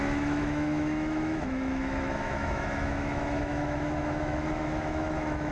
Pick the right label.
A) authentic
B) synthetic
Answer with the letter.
B